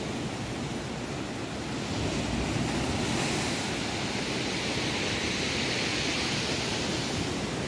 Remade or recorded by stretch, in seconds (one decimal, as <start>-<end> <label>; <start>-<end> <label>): 0.0-7.7 recorded